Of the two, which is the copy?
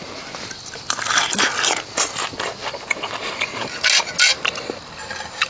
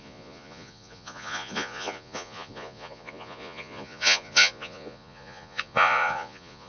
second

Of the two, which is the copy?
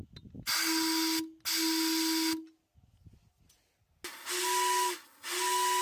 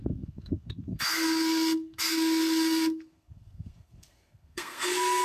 second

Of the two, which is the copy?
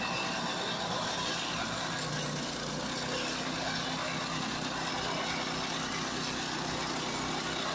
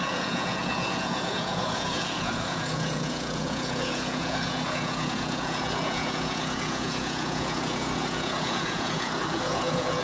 second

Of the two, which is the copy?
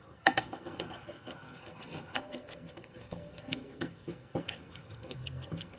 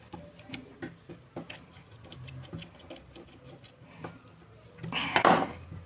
first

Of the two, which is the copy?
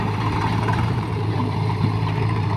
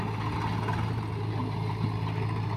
first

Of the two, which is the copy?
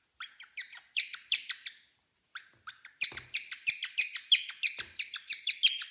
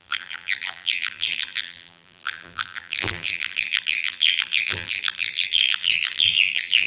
second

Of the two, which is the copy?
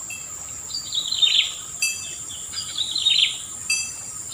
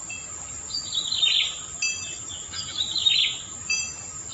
first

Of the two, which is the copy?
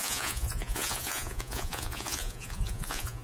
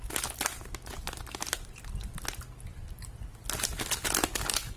first